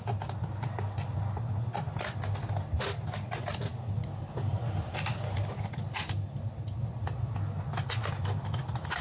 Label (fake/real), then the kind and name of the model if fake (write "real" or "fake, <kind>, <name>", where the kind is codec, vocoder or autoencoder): real